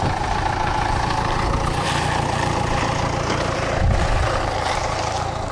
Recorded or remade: remade